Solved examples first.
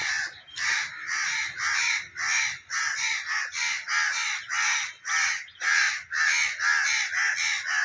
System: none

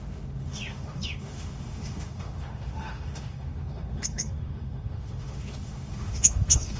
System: autoencoder, DAC-VAE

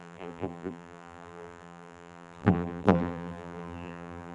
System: vocoder, BigVGAN v2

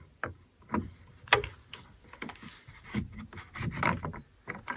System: none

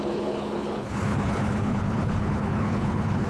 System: codec, HILCodec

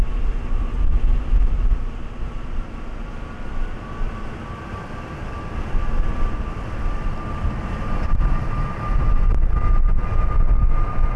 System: none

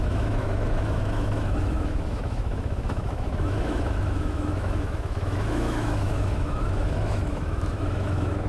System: autoencoder, DAC-VAE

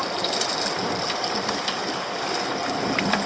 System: none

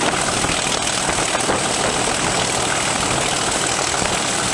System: none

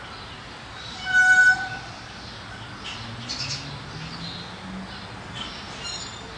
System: none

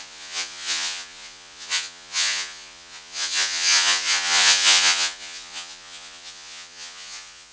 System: vocoder, Vocos